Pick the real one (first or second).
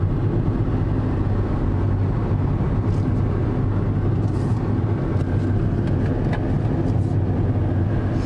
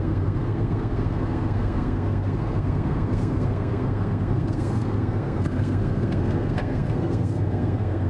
first